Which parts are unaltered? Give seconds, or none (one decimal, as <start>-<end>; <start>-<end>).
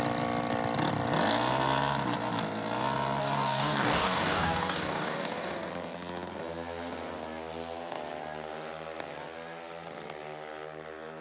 0.0-3.2; 5.7-11.2